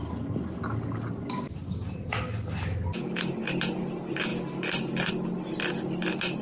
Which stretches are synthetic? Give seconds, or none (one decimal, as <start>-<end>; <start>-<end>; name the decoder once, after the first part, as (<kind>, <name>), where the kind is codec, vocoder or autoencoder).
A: none